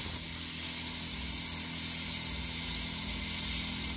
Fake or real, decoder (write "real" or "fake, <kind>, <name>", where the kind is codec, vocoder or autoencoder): real